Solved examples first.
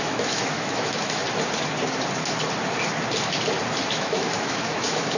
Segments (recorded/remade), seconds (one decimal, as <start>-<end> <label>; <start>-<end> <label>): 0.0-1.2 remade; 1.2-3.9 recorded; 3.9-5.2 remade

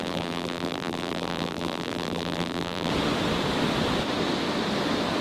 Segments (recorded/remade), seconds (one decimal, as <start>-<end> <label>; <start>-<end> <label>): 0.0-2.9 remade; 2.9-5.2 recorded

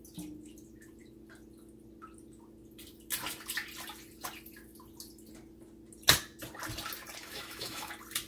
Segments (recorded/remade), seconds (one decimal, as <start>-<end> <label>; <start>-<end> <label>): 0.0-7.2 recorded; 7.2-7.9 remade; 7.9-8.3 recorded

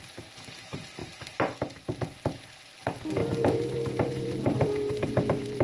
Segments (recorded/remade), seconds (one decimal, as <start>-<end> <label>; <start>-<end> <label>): 0.0-3.2 recorded; 3.2-5.6 remade

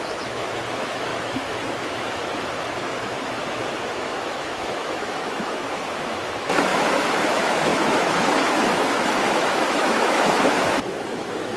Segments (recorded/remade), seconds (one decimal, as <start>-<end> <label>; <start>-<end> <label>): 0.0-11.6 remade

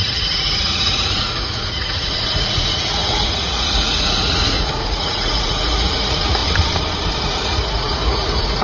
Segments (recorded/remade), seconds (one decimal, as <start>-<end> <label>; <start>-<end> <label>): 0.0-6.4 remade; 6.4-7.2 recorded; 7.2-8.6 remade